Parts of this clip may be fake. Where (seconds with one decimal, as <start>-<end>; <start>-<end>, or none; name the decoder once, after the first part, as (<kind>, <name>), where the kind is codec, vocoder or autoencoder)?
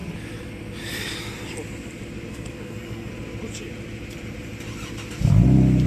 2.3-3.1 (codec, SNAC)